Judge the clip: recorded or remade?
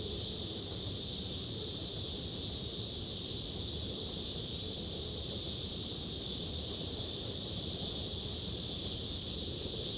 remade